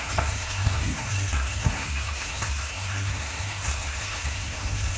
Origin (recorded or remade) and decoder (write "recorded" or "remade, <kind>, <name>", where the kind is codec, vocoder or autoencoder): remade, codec, SNAC